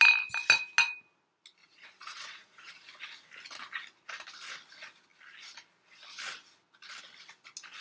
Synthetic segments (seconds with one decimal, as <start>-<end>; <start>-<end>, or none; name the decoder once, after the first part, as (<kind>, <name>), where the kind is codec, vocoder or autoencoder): 1.6-2.7 (vocoder, Vocos)